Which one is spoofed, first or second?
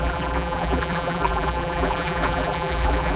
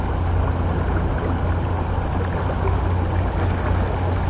first